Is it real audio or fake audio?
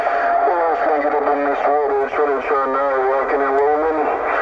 real